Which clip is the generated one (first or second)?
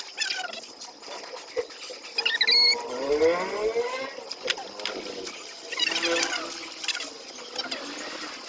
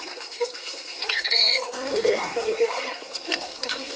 second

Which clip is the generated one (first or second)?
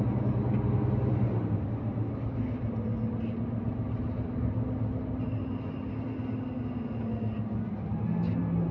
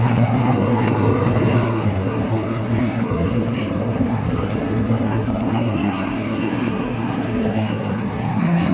second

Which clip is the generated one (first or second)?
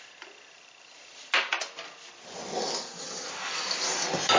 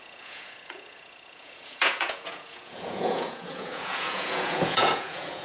second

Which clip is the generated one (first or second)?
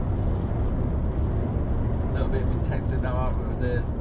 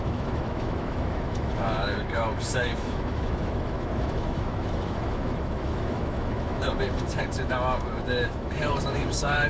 second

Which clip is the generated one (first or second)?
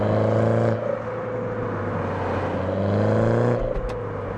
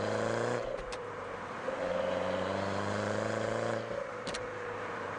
second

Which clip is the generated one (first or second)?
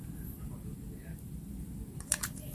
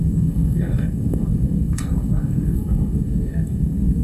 second